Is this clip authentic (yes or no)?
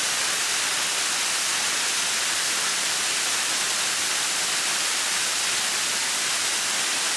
yes